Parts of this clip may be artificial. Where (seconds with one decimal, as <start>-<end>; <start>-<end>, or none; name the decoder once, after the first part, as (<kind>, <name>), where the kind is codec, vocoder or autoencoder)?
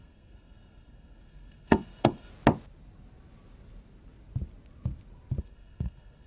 0.0-2.3 (codec, SNAC); 5.4-6.3